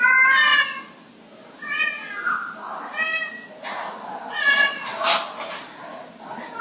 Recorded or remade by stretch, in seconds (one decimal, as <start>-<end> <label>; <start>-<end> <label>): 0.0-6.6 recorded